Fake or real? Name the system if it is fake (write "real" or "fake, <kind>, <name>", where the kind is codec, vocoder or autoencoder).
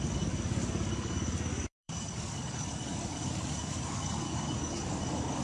fake, codec, DAC